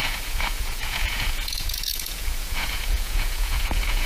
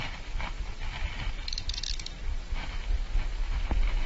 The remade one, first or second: first